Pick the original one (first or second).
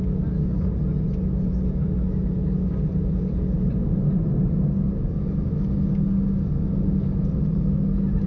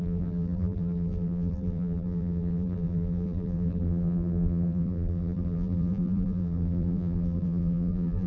first